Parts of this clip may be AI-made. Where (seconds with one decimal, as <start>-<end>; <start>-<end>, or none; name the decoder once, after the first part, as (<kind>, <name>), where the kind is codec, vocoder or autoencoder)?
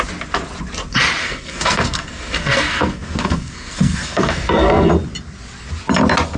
1.2-4.9 (codec, SNAC)